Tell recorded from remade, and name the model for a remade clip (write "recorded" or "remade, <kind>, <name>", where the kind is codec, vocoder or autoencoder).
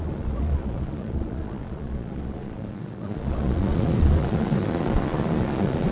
remade, vocoder, Vocos